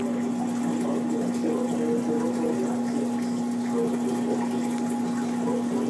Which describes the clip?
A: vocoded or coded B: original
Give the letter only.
B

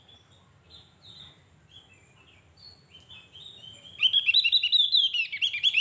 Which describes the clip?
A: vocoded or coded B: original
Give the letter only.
B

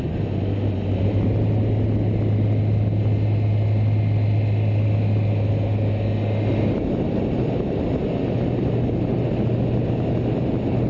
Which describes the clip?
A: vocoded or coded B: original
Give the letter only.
B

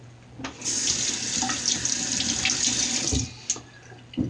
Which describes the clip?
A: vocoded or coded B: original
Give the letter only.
B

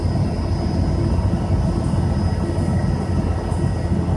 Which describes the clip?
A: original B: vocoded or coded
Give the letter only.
A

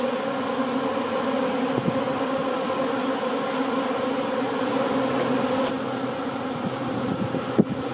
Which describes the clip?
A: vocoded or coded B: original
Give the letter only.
B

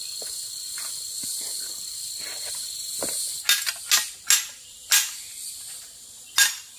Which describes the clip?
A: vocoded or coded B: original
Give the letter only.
B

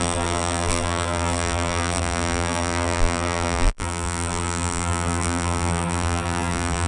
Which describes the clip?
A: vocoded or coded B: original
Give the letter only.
A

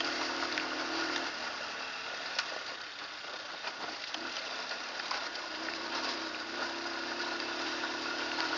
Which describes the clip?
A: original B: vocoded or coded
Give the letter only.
A